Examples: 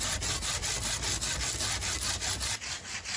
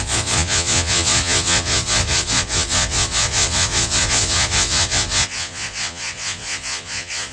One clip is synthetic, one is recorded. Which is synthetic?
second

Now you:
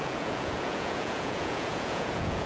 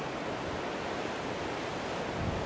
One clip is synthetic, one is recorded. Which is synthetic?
first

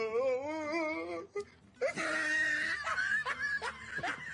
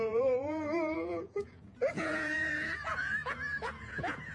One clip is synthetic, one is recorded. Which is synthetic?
second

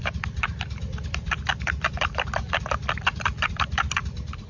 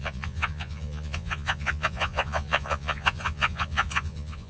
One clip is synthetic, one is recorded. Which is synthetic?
second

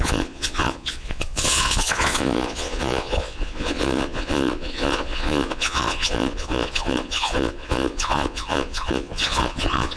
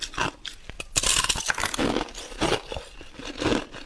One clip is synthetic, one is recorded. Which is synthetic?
first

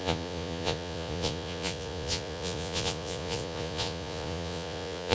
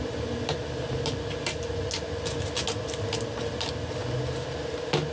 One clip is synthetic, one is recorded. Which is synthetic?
first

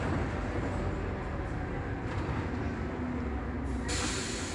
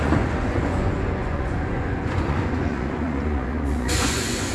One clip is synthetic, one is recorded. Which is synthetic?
second